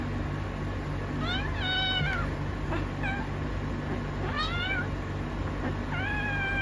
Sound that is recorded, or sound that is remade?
recorded